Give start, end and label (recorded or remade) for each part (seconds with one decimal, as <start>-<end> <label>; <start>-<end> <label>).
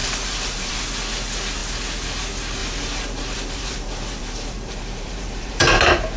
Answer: 0.0-0.7 remade; 0.7-2.6 recorded; 2.6-6.2 remade